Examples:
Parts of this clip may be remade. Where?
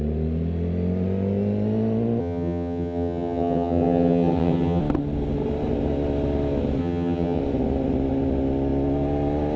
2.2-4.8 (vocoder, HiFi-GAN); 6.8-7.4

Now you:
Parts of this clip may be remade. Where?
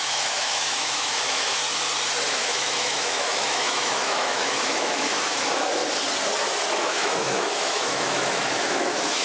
0.0-1.6 (autoencoder, DAC-VAE); 2.3-5.8; 6.7-9.2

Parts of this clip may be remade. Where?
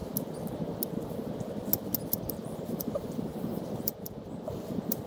2.2-3.9 (vocoder, BigVGAN v2); 4.5-5.1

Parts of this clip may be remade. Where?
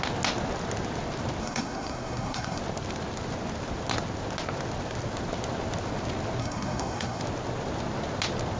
1.4-2.6 (codec, SNAC); 6.4-7.2